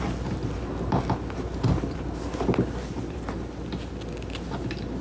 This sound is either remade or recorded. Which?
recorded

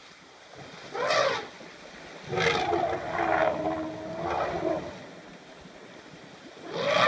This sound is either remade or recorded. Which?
recorded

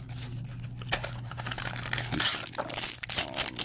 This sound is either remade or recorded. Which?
recorded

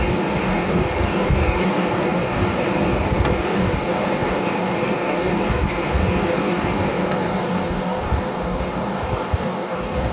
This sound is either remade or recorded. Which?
remade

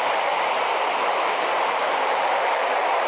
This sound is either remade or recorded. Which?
recorded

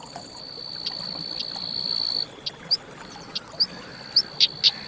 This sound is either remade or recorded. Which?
recorded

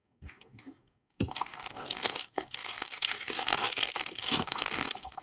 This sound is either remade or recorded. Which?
remade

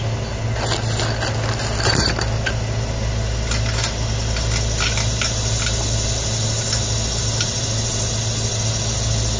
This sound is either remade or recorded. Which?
recorded